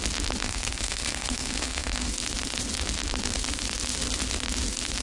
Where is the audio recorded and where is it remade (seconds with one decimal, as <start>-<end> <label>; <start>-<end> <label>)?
0.0-0.4 recorded; 0.4-2.1 remade; 2.1-5.0 recorded